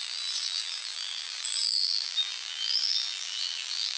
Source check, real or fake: fake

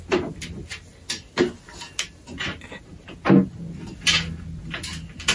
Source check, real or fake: real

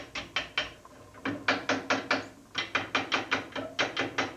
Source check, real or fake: real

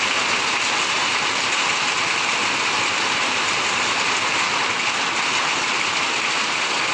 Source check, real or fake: real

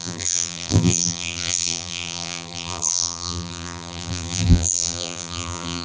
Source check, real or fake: fake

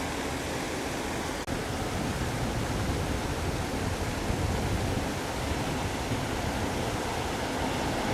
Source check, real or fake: real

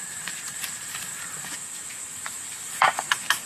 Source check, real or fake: fake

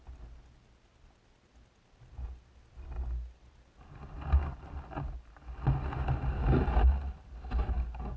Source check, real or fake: real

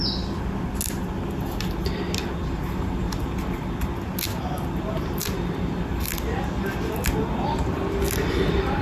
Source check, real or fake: real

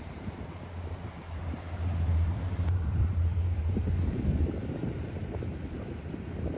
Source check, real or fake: fake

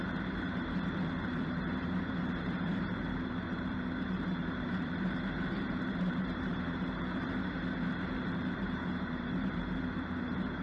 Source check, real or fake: fake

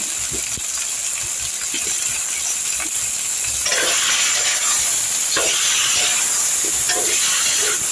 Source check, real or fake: real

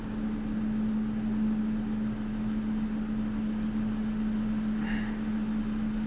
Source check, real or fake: real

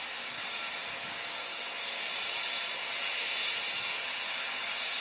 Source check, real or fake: real